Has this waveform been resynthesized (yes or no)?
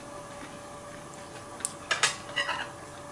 no